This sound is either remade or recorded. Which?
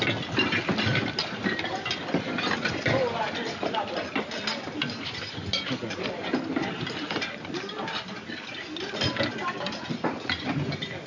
recorded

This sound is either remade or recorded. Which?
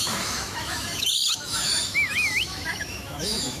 remade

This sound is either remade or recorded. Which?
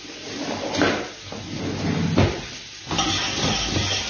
recorded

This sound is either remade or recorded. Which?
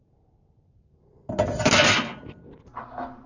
recorded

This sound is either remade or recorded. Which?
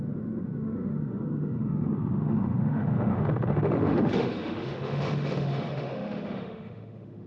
remade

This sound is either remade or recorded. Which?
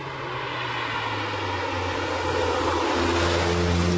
recorded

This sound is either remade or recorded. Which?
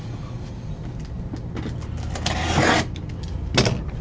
recorded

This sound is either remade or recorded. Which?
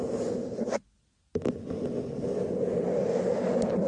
recorded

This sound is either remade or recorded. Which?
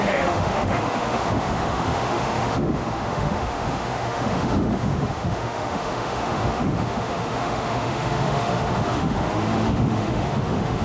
remade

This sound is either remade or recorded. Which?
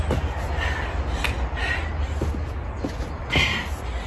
recorded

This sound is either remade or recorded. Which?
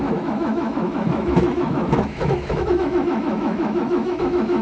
remade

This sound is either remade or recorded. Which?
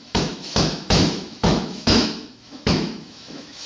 remade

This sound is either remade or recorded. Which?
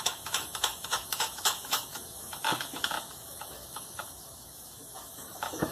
remade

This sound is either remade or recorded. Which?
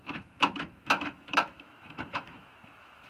remade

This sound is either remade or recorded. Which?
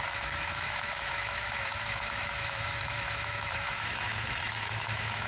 remade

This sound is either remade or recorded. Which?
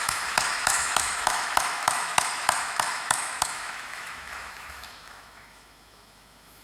remade